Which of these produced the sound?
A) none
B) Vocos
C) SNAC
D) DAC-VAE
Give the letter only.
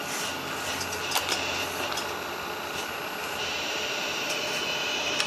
A